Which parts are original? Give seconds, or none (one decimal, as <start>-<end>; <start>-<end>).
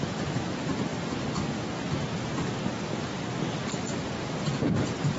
0.0-5.2